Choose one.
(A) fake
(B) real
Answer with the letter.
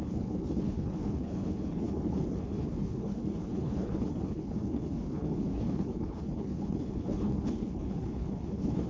A